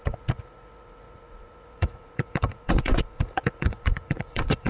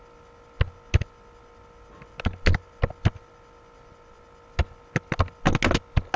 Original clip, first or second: second